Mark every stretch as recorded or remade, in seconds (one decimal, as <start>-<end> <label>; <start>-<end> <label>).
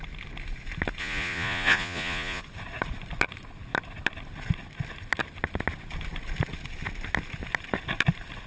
0.0-1.0 recorded; 1.0-2.4 remade; 2.4-8.5 recorded